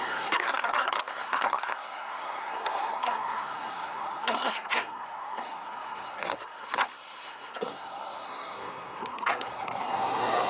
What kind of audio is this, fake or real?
fake